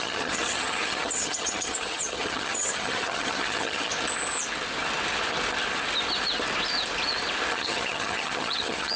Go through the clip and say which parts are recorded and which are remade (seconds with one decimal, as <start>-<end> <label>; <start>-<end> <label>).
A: 0.0-3.9 remade; 3.9-7.5 recorded; 7.5-9.0 remade